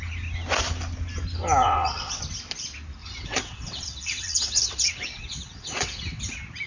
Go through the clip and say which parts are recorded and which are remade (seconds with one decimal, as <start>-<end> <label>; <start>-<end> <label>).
0.0-1.6 recorded; 1.6-2.2 remade; 2.2-3.0 recorded; 3.0-6.2 remade; 6.2-6.7 recorded